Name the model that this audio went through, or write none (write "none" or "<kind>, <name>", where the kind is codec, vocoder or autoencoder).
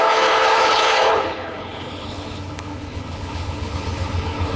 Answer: codec, HILCodec